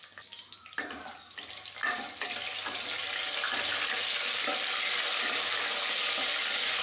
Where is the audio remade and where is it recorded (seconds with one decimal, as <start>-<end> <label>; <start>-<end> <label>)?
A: 0.0-6.8 recorded